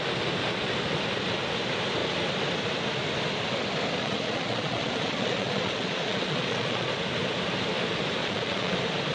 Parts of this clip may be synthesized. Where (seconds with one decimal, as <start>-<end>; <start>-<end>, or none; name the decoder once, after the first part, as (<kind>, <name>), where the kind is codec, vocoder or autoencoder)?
4.0-6.9 (vocoder, Vocos); 8.2-8.7